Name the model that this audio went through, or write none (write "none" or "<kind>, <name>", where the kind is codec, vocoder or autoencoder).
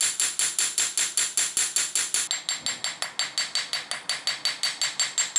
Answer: none